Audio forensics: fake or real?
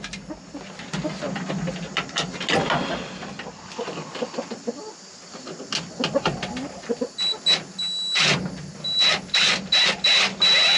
real